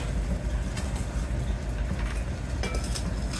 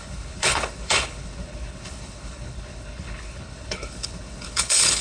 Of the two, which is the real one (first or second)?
first